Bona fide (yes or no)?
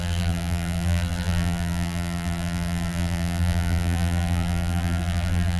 no